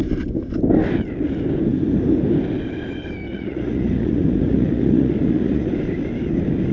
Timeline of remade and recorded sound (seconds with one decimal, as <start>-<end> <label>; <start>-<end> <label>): 0.0-3.3 recorded; 3.3-5.7 remade; 5.7-6.7 recorded